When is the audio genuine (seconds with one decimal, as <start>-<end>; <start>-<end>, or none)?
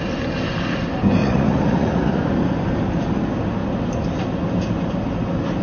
0.0-1.2; 2.2-5.6